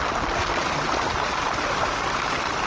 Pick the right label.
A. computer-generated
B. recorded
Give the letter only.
B